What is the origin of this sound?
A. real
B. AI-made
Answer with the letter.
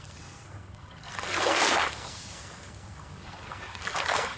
B